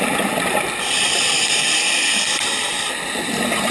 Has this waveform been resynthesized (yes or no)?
no